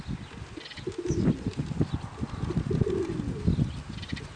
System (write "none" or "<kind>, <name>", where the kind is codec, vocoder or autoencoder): none